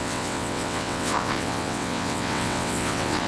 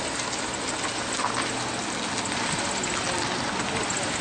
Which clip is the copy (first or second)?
first